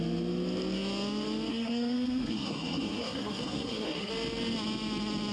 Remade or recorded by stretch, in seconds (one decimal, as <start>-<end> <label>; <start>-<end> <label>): 0.0-1.5 recorded; 1.5-4.1 remade; 4.1-5.3 recorded